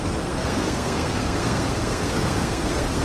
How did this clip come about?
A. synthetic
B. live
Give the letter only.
A